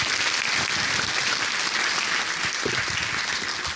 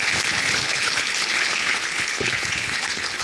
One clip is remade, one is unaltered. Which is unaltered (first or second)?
first